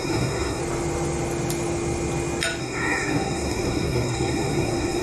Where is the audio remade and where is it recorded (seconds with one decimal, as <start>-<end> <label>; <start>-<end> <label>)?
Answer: 0.0-0.6 remade; 0.6-2.6 recorded; 2.6-5.0 remade